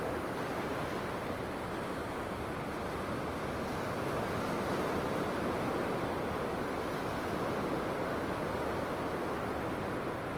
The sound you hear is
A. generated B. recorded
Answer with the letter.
B